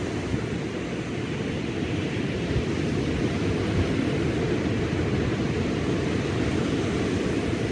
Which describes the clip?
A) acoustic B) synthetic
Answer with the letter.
A